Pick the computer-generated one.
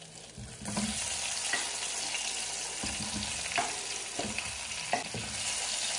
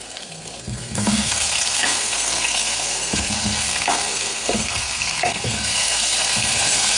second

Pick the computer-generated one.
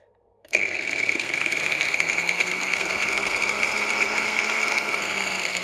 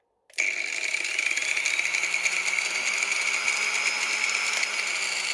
first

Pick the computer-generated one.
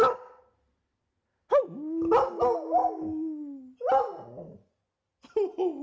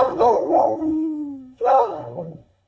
second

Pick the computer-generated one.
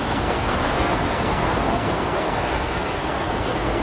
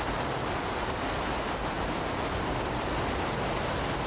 first